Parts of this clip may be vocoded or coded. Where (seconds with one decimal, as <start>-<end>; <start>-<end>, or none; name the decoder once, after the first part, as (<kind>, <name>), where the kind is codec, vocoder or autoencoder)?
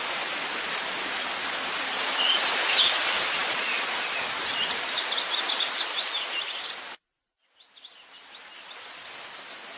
none